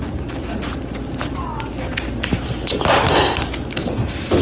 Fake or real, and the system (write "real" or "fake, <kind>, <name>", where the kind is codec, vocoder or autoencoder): real